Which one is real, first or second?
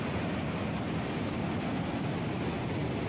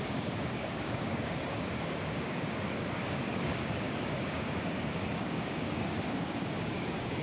first